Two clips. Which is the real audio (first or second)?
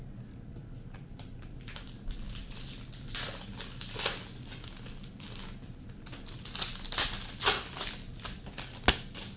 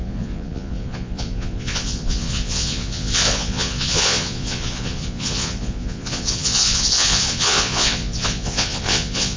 first